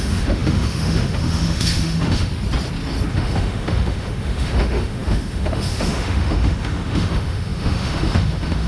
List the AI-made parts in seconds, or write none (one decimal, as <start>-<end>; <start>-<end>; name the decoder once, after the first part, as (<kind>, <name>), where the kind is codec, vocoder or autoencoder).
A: 0.0-2.3 (autoencoder, DAC-VAE); 3.1-8.7